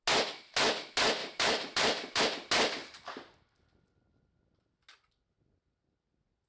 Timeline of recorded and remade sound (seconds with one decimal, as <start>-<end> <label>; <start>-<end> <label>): 0.0-1.2 recorded; 1.2-2.2 remade; 2.2-6.5 recorded